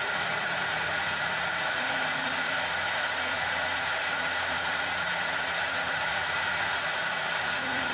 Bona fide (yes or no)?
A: no